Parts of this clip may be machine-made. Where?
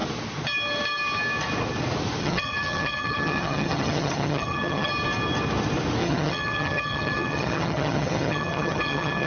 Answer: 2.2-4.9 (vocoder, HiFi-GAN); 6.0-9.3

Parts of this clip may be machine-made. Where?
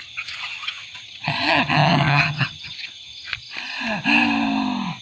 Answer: 0.0-3.3 (vocoder, HiFi-GAN)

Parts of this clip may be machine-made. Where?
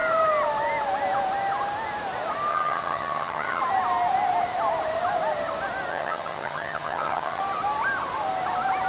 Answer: 2.5-3.6 (vocoder, HiFi-GAN); 5.9-7.4